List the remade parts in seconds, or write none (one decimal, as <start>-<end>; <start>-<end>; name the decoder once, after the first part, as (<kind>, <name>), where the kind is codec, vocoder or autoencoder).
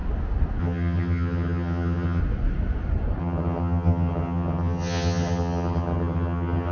0.6-2.2 (vocoder, HiFi-GAN); 3.2-6.7